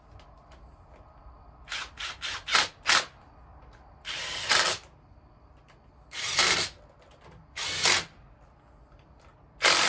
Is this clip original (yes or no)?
yes